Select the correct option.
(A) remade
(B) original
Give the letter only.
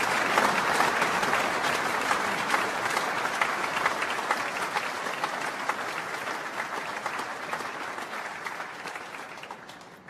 B